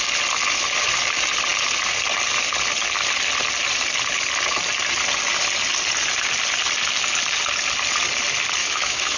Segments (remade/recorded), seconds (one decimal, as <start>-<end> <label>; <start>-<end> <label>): 0.0-8.6 recorded; 8.6-9.2 remade